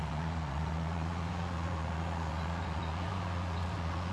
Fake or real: fake